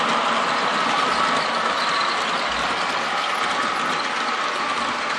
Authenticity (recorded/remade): recorded